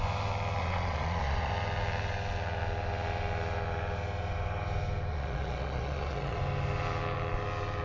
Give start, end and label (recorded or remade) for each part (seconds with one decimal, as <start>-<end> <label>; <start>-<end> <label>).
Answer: 0.0-0.6 recorded; 0.6-1.5 remade; 1.5-5.1 recorded; 5.1-6.4 remade; 6.4-7.8 recorded